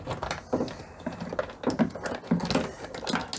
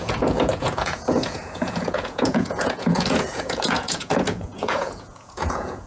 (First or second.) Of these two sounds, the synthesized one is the second